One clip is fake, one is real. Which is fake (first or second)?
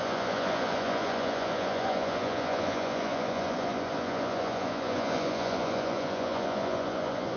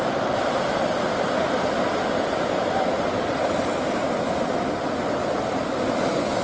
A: first